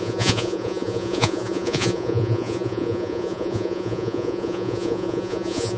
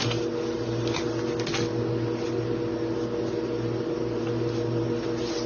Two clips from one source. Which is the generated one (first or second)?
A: first